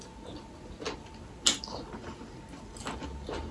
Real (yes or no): yes